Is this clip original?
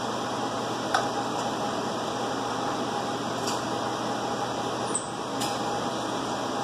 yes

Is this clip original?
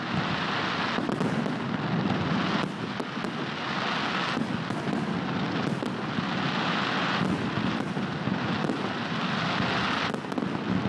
yes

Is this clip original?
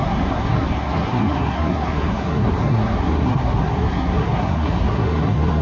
no